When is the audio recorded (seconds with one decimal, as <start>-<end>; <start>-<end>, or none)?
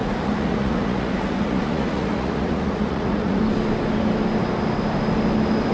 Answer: 3.4-5.7